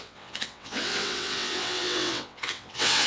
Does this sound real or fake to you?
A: fake